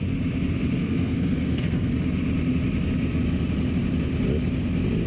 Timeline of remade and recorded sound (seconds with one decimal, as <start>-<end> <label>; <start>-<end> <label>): 0.0-0.8 recorded; 0.8-1.9 remade; 1.9-5.1 recorded